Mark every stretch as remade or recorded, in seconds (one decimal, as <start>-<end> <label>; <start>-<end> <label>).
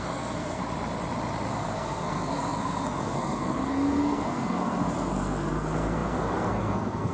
0.0-0.6 remade; 0.6-1.5 recorded; 1.5-7.1 remade